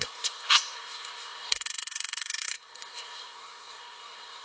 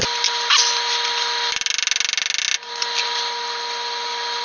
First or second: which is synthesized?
first